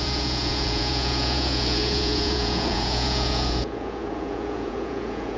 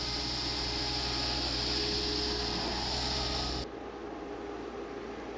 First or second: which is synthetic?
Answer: first